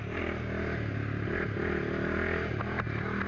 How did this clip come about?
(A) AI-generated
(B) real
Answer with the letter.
B